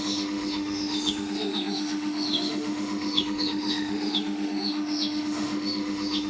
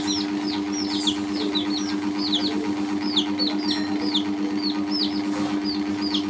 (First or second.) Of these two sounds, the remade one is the first